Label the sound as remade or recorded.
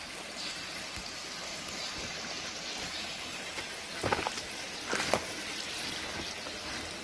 recorded